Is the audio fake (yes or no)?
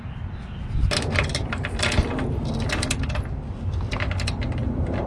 no